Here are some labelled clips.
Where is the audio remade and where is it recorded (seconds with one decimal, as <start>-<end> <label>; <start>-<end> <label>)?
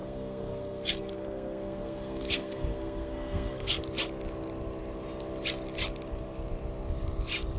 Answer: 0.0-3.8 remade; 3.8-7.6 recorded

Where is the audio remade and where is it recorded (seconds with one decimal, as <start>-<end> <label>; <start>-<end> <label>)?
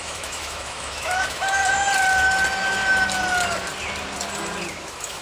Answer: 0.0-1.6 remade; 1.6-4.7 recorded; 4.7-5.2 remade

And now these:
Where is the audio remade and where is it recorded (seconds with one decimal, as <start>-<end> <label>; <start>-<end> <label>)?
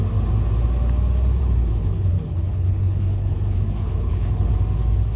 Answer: 0.0-1.4 recorded; 1.4-4.5 remade; 4.5-5.2 recorded